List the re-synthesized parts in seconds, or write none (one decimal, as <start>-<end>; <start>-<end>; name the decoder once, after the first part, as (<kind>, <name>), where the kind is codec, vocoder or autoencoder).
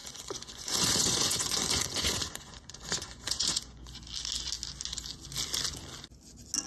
0.0-4.0 (vocoder, Vocos)